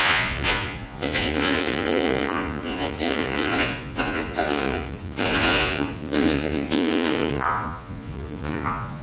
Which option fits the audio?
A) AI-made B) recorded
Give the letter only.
A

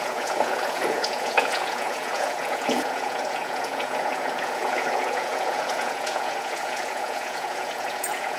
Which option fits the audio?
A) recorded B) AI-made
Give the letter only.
B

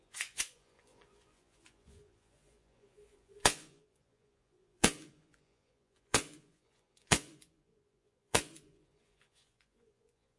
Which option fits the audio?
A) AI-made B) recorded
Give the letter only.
A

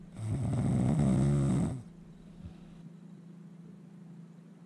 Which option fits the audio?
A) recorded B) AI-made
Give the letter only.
A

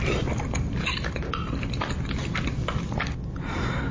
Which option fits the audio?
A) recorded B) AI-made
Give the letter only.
A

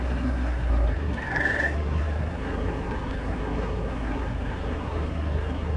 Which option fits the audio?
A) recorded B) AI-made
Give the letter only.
B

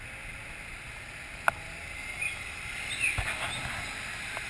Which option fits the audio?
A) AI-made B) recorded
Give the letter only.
B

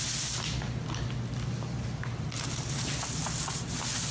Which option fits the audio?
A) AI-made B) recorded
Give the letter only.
B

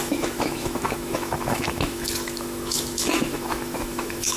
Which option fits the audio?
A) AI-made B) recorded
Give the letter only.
A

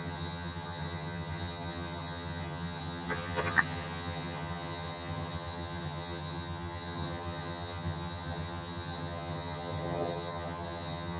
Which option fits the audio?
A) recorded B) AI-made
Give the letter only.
B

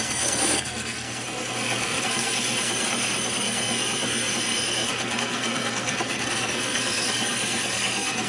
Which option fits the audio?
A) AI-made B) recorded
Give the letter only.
A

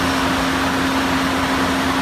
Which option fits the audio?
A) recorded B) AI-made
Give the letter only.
A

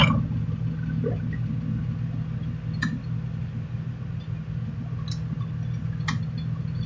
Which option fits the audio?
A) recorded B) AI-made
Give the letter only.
A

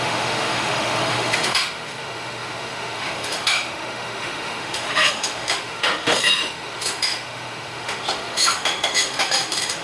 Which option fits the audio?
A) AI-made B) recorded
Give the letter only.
A